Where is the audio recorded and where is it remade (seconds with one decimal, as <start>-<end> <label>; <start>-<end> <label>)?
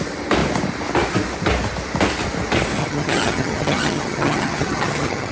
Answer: 0.0-2.8 recorded; 2.8-5.3 remade